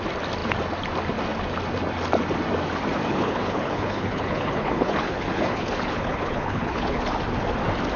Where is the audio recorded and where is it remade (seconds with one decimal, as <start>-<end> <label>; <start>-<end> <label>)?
0.0-3.1 recorded; 3.1-7.0 remade; 7.0-8.0 recorded